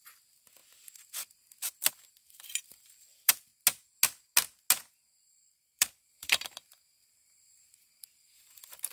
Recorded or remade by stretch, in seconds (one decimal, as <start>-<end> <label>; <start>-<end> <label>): 0.0-0.6 remade; 0.6-1.9 recorded; 1.9-3.5 remade; 3.5-4.9 recorded; 4.9-8.9 remade